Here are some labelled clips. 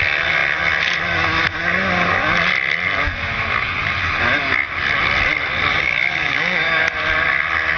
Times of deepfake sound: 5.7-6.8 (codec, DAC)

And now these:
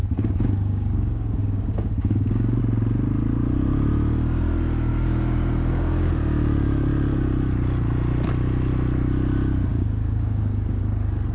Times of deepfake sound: 0.0-2.6 (codec, DAC); 4.9-6.1; 9.7-10.8

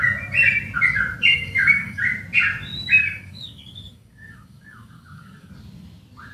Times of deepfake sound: 1.3-2.0 (codec, DAC); 3.0-5.5

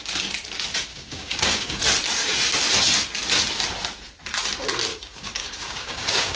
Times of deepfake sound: 0.9-1.8 (codec, DAC); 4.9-6.4